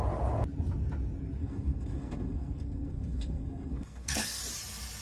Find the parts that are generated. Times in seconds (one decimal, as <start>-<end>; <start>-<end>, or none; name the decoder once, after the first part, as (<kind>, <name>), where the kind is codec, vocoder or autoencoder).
1.4-4.4 (codec, SNAC)